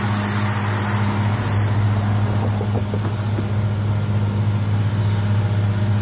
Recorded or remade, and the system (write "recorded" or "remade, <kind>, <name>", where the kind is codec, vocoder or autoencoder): recorded